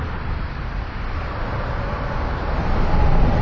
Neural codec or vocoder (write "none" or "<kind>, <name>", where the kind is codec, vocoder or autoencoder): vocoder, BigVGAN v2